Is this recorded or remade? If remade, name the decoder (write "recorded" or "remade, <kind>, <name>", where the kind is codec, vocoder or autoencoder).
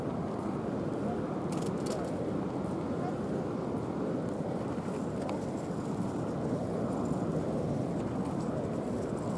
recorded